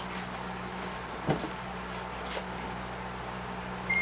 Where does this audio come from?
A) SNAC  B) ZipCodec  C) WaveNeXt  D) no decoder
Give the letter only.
D